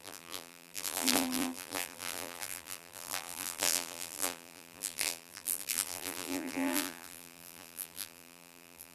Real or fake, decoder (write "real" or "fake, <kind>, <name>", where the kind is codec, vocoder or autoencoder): fake, vocoder, BigVGAN v2